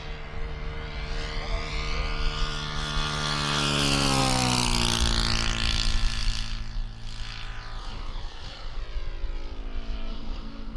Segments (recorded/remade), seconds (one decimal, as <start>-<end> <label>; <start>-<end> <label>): 0.0-7.8 recorded; 7.8-8.8 remade; 8.8-10.1 recorded; 10.1-10.8 remade